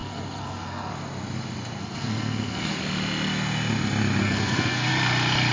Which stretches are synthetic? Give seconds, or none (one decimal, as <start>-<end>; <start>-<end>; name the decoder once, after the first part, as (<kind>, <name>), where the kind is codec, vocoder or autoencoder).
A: 0.0-0.9 (codec, SNAC); 1.8-2.8; 4.2-4.9